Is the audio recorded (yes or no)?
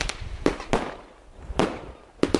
yes